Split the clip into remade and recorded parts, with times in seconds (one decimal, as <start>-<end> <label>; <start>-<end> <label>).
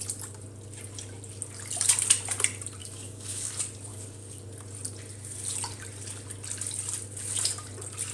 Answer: 0.0-2.8 recorded; 2.8-3.5 remade; 3.5-3.9 recorded; 3.9-4.4 remade; 4.4-8.1 recorded